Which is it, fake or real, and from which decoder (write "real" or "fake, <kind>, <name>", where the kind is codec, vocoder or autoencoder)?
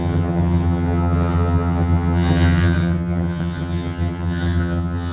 fake, vocoder, HiFi-GAN